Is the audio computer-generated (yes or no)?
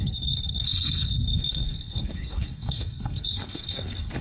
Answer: yes